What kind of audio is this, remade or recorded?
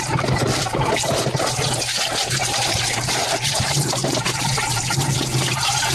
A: remade